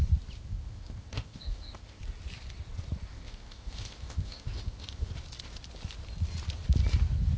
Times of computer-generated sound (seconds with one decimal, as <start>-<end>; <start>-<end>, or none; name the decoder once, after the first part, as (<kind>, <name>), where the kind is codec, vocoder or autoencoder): 0.4-2.0 (codec, ZipCodec); 3.1-5.1